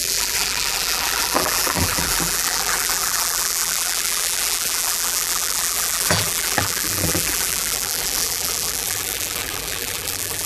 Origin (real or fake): fake